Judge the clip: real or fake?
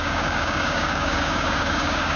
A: fake